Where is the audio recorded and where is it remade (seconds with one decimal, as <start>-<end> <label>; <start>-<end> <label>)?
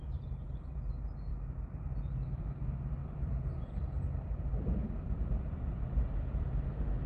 0.0-3.0 recorded; 3.0-7.1 remade